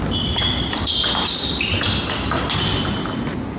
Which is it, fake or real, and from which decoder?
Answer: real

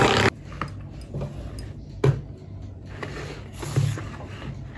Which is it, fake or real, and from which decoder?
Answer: real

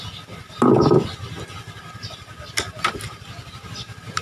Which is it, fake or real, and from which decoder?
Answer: real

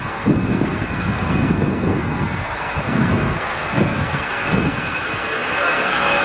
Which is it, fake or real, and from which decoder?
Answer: fake, codec, SNAC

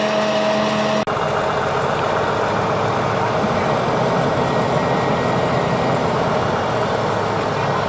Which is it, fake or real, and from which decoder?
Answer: real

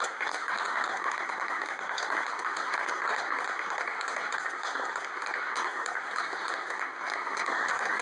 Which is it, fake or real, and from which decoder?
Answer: fake, codec, SNAC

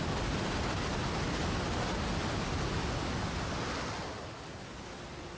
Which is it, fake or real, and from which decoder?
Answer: real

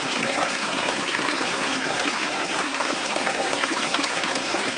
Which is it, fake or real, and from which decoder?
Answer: fake, codec, SNAC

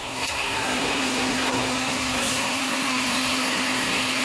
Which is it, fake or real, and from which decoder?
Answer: fake, codec, SNAC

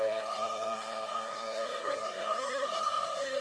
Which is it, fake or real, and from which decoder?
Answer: fake, codec, SNAC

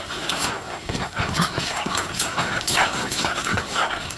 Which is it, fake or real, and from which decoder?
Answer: fake, codec, SNAC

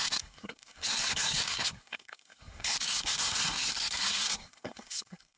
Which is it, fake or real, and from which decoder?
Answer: fake, codec, SNAC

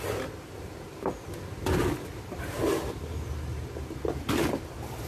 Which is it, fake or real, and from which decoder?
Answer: real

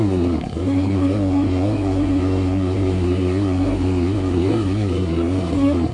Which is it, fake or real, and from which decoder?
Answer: fake, codec, SNAC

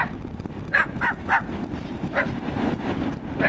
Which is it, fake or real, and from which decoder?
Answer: real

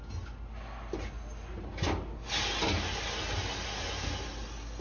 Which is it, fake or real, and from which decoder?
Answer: real